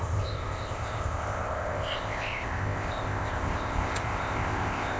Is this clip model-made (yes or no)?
yes